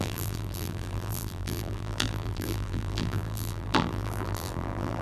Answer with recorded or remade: remade